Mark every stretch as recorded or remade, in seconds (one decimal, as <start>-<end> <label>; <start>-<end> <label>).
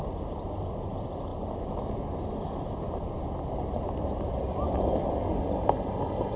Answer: 0.0-6.4 recorded